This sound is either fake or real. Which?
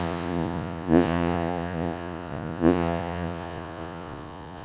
fake